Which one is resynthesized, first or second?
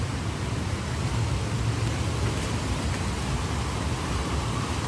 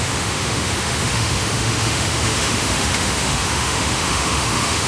second